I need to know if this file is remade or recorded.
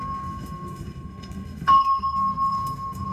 remade